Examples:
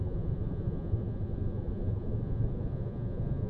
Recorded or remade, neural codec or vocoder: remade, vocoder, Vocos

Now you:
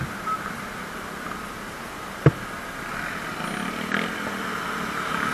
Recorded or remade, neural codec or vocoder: recorded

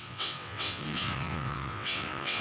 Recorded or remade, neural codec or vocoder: remade, vocoder, WaveNeXt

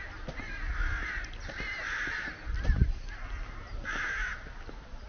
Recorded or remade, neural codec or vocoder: recorded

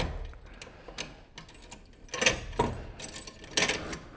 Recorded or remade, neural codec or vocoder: recorded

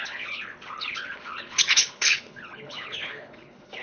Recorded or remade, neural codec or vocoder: remade, codec, HILCodec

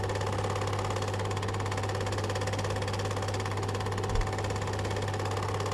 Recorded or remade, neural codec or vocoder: recorded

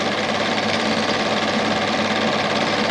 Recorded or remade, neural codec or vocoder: recorded